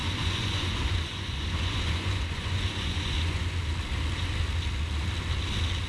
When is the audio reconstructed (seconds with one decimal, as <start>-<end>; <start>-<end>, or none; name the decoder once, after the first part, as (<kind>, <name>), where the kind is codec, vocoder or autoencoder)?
0.0-3.5 (vocoder, Vocos)